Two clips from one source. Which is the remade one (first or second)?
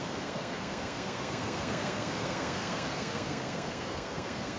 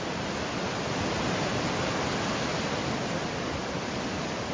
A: first